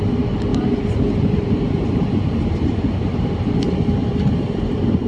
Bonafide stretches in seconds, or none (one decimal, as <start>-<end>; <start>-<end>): 0.0-0.5; 3.6-4.0

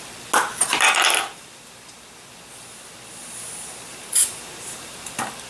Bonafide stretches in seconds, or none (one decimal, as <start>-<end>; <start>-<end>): 0.0-0.7; 1.5-3.9; 5.1-5.5

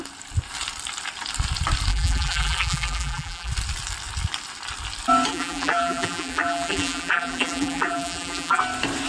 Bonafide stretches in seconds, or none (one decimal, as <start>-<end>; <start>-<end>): 0.0-1.9; 3.5-5.3; 8.6-9.1

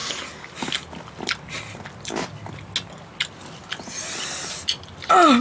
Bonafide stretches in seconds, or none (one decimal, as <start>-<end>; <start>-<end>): 0.0-5.4